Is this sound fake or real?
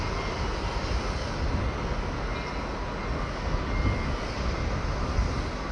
real